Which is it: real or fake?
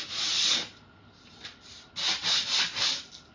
real